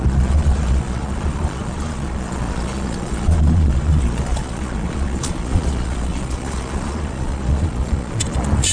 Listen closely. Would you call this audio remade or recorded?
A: remade